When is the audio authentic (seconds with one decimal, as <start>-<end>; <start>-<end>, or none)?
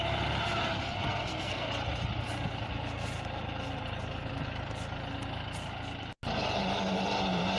0.0-0.7; 1.7-7.6